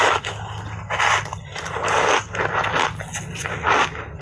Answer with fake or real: real